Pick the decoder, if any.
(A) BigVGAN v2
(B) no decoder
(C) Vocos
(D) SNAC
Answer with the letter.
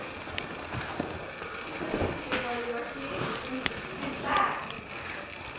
B